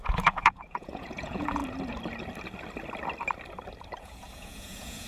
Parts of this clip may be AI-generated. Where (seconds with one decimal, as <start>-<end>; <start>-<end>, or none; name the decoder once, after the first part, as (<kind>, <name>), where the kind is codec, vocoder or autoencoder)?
0.0-1.6 (vocoder, Vocos); 4.0-5.1